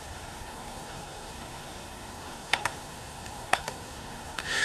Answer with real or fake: fake